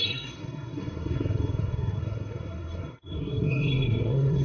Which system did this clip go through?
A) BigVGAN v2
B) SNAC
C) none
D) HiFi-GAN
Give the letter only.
B